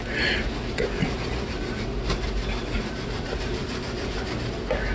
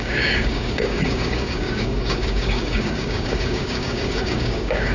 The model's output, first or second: second